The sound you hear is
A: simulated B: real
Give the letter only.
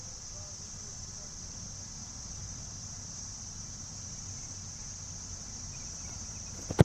B